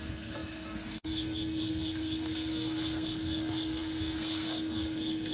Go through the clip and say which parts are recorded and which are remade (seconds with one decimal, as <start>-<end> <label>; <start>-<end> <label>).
0.0-5.3 remade

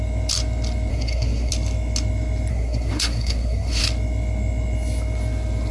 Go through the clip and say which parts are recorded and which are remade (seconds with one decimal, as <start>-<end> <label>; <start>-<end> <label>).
0.0-0.9 recorded; 0.9-1.5 remade; 1.5-2.5 recorded; 2.5-3.8 remade; 3.8-5.7 recorded